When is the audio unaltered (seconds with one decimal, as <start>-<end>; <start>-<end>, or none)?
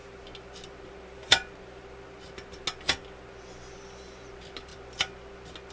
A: 0.0-5.7